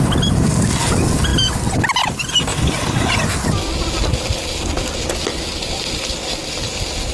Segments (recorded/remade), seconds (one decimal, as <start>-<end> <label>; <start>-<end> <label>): 0.0-7.1 recorded